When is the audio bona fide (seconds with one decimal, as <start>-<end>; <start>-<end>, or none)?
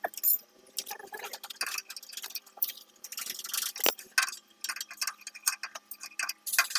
0.0-2.4; 3.1-6.8